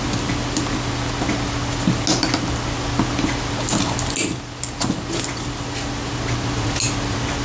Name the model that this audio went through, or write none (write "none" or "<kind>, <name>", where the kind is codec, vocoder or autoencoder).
none